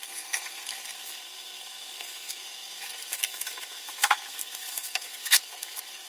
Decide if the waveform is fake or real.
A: fake